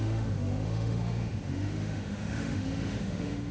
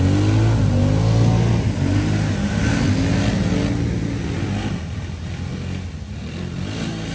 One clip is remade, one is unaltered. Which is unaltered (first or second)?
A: second